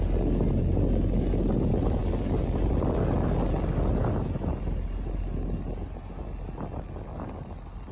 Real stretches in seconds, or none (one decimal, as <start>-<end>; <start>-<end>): 0.0-7.9